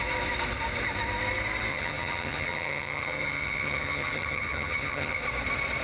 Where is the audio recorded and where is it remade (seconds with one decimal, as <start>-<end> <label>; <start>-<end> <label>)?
0.0-1.7 recorded; 1.7-5.2 remade; 5.2-5.8 recorded